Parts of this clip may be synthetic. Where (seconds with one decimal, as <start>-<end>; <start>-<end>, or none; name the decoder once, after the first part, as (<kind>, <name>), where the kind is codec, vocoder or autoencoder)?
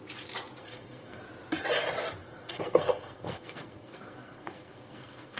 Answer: 0.6-1.2 (codec, SNAC); 2.2-5.4